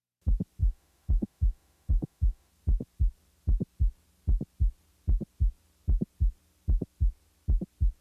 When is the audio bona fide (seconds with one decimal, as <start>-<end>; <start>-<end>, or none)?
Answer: 0.0-0.6; 2.5-8.0